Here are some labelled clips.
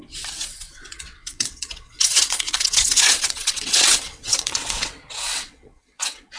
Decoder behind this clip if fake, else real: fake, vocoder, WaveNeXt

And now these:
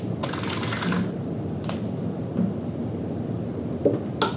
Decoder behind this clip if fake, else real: real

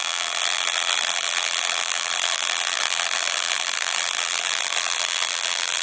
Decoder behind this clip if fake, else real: fake, vocoder, BigVGAN v2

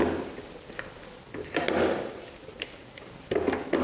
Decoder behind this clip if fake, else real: real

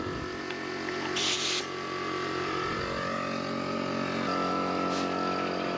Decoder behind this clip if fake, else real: real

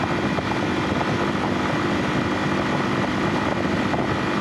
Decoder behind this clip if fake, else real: real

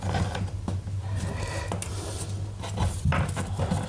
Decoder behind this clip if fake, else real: real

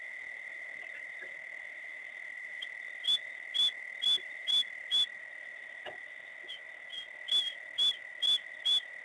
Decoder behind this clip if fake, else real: real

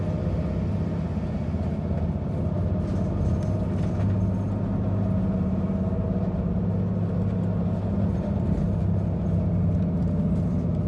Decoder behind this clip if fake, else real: real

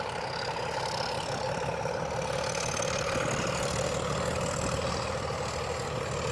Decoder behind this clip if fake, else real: real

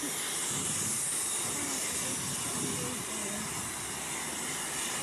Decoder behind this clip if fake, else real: real